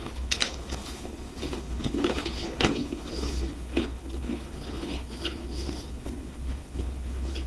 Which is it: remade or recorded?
remade